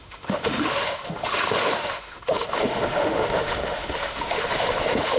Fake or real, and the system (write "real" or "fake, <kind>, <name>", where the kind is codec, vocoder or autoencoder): fake, autoencoder, DAC-VAE